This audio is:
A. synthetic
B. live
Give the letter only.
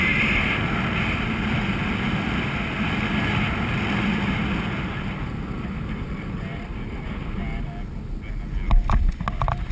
B